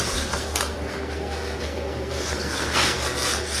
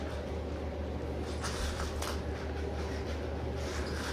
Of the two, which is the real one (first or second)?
second